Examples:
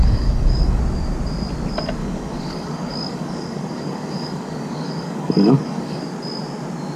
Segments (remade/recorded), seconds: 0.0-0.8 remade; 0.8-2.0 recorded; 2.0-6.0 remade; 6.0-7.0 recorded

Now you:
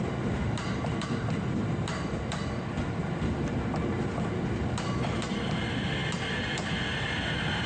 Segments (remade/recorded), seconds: 0.0-7.7 recorded